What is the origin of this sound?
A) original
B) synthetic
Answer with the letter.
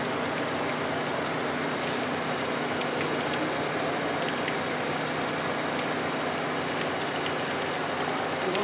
A